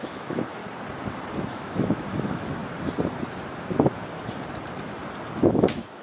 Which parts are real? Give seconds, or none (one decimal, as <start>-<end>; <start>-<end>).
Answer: 0.6-1.5; 2.6-5.4